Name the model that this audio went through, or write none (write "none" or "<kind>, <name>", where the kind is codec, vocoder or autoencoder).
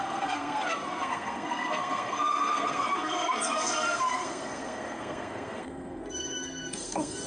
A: codec, SNAC